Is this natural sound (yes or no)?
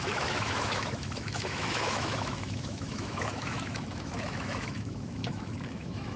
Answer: no